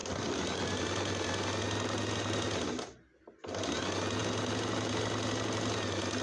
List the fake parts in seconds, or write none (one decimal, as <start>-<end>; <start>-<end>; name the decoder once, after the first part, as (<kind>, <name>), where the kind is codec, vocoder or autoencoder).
none